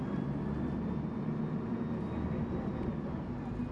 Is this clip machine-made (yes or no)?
no